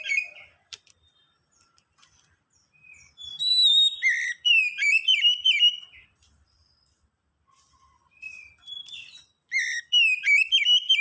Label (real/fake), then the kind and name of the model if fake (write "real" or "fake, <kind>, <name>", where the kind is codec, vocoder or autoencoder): fake, vocoder, BigVGAN v2